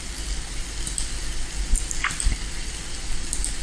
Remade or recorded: recorded